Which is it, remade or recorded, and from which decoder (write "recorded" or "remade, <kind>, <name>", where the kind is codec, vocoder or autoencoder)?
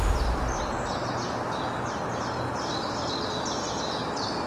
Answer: recorded